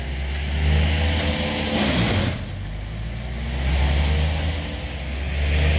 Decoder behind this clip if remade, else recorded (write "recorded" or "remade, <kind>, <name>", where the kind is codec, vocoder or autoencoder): recorded